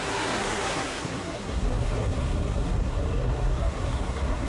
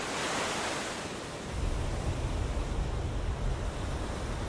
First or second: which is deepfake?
first